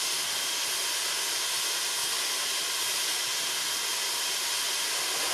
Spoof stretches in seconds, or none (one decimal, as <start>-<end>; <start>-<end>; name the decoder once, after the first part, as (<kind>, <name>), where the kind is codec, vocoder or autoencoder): none